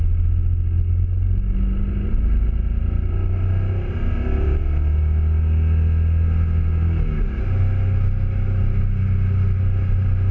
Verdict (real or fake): real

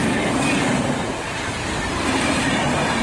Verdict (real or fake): fake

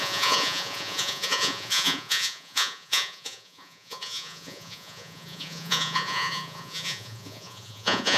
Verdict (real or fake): fake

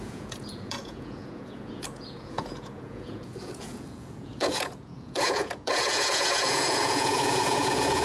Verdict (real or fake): fake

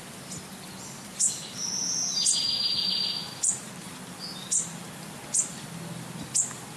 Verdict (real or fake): real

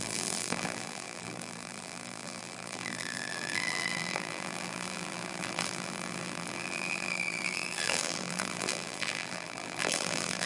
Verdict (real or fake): fake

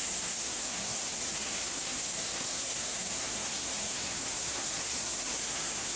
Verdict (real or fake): fake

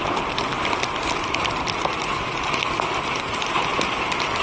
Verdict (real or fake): real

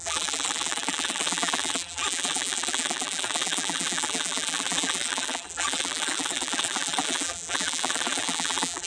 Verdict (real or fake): fake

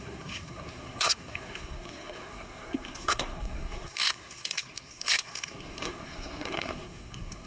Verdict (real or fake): fake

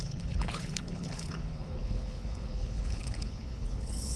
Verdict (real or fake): fake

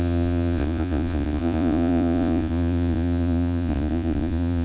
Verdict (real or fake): fake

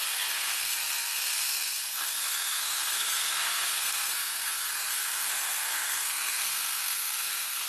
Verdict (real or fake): fake